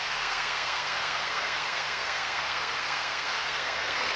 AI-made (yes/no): yes